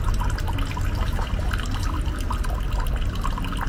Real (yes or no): yes